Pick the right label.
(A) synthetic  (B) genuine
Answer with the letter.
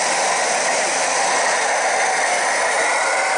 B